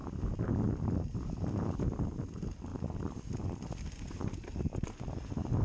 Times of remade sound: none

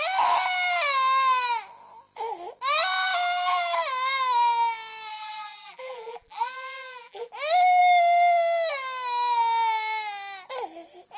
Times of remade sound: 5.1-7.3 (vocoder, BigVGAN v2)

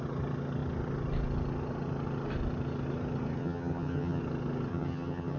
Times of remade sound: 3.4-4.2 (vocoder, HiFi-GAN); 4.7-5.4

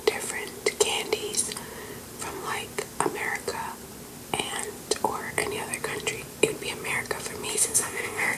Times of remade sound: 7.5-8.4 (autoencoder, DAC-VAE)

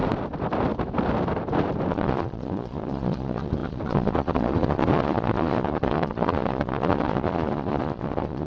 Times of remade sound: 1.9-8.5 (vocoder, Vocos)